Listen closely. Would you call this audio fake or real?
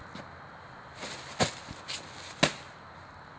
real